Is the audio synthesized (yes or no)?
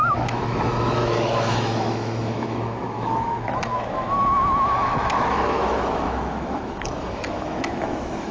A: yes